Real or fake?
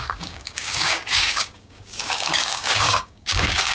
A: fake